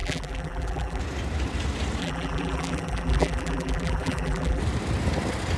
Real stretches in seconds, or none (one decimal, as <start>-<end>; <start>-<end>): 1.0-2.0; 4.6-5.6